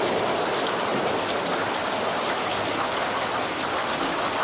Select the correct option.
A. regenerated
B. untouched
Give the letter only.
B